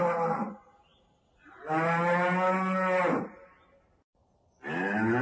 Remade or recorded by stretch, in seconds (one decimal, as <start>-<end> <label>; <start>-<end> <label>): 0.0-5.2 recorded